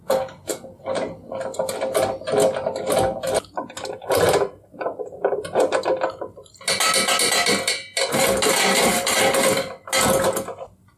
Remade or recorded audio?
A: recorded